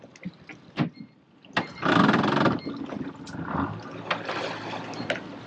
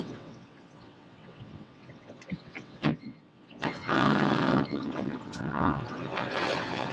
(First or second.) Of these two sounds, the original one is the first